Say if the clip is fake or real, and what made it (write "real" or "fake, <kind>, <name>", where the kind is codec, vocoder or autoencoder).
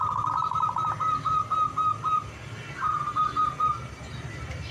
real